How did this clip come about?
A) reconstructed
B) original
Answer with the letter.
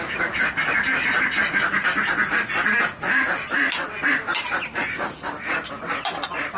B